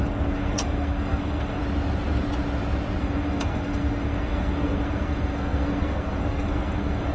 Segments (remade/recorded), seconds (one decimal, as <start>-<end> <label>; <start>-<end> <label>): 0.0-1.6 remade; 1.6-3.0 recorded; 3.0-7.1 remade